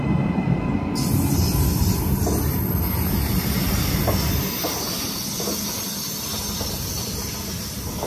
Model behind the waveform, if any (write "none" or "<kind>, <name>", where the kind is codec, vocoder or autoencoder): none